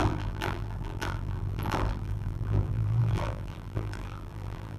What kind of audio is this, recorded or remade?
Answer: remade